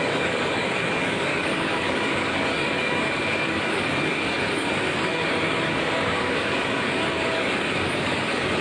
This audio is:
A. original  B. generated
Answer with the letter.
B